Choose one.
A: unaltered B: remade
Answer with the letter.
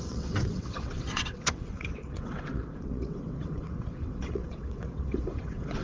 B